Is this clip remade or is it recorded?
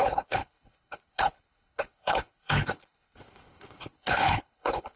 remade